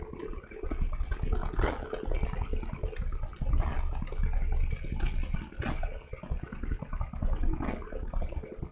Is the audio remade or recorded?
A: recorded